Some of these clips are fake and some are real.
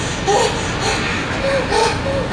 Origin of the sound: real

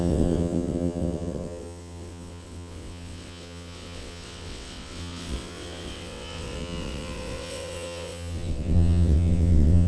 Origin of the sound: fake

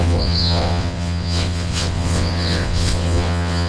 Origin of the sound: fake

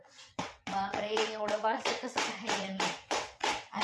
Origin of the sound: fake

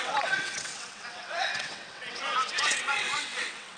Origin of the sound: fake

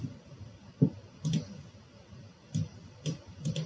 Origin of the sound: real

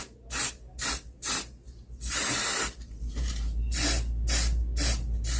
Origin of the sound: real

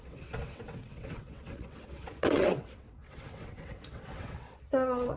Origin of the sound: fake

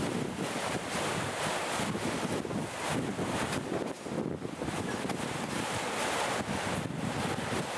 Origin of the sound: real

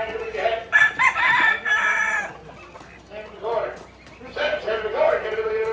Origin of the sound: real